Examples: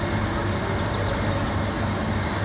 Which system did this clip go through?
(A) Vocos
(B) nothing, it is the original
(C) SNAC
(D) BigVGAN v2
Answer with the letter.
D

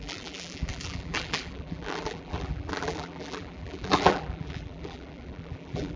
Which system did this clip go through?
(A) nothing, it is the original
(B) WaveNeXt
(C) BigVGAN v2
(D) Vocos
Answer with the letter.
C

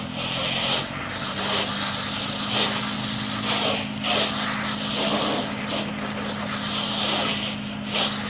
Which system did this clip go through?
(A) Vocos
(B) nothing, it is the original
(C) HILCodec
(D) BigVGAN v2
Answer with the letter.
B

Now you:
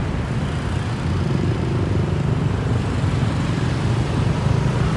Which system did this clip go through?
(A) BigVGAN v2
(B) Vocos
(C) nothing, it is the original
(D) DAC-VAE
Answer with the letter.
A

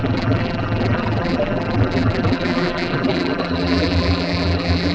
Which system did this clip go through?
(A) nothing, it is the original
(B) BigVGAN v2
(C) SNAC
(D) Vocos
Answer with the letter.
B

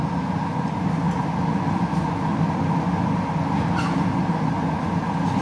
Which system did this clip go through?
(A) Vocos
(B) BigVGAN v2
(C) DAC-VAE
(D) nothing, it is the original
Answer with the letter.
D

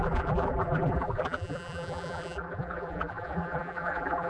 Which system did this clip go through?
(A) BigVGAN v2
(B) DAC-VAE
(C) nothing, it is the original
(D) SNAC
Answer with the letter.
A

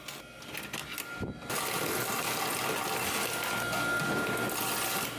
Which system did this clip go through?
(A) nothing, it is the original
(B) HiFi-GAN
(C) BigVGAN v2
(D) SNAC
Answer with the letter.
A